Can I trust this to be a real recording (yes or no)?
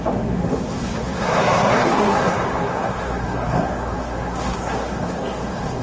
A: no